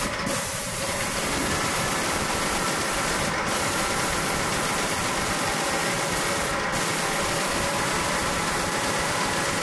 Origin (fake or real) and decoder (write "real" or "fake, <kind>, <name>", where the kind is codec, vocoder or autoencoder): real